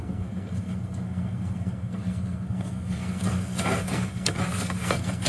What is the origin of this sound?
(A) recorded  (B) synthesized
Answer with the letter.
B